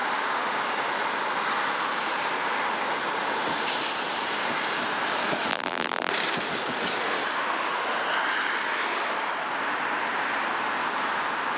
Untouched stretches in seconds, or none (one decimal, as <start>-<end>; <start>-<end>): 0.0-5.5; 6.1-11.6